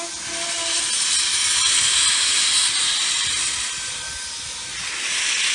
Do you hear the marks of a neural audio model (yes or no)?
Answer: no